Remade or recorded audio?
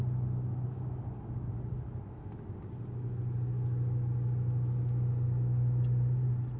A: recorded